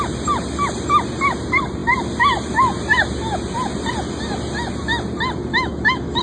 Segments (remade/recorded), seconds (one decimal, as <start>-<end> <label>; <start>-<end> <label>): 0.0-5.5 recorded; 5.5-6.2 remade